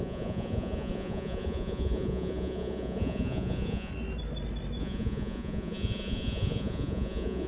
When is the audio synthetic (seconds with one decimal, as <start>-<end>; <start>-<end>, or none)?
0.0-3.9; 4.8-7.5

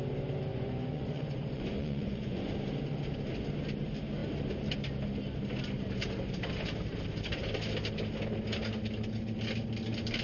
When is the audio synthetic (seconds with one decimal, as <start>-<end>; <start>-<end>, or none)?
0.5-2.5

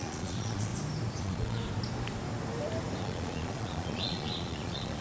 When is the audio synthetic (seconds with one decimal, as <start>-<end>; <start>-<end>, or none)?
0.0-0.7; 1.2-1.6; 3.0-5.0

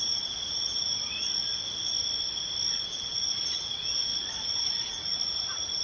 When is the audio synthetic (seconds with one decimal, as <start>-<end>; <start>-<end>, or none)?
0.0-1.4; 2.7-4.1; 4.6-5.8

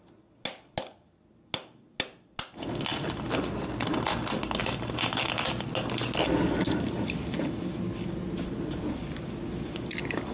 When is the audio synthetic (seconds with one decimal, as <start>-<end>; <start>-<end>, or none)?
none

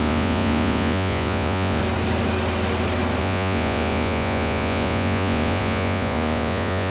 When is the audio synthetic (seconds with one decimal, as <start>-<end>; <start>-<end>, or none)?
0.0-1.8; 3.2-6.9

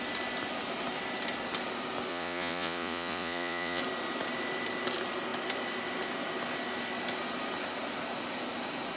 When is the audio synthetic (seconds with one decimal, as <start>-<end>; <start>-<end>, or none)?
2.1-3.8